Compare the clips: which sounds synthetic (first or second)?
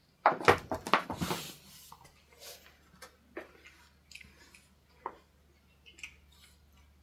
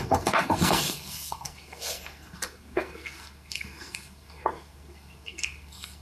second